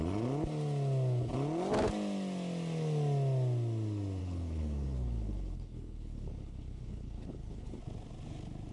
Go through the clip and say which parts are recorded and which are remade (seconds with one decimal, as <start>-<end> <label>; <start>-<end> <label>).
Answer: 0.0-4.2 recorded; 4.2-7.8 remade; 7.8-8.7 recorded